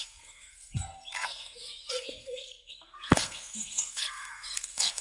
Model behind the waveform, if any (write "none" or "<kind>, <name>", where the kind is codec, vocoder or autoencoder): codec, SNAC